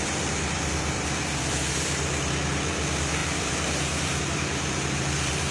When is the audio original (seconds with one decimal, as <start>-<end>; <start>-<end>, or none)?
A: none